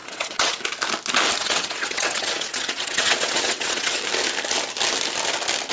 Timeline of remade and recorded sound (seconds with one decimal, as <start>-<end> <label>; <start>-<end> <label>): 0.0-0.6 remade; 0.6-1.4 recorded; 1.4-4.0 remade; 4.0-5.7 recorded